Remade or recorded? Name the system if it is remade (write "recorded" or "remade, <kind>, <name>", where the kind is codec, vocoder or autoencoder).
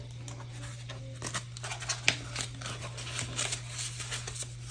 recorded